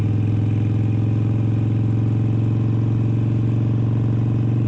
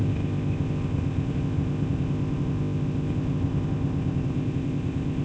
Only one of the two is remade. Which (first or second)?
second